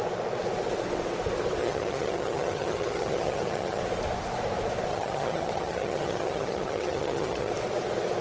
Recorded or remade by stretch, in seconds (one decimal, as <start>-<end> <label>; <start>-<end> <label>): 0.0-1.6 recorded; 1.6-3.8 remade; 3.8-4.9 recorded; 4.9-7.5 remade; 7.5-8.2 recorded